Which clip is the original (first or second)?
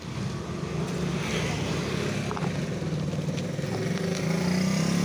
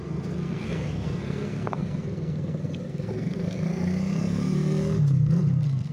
first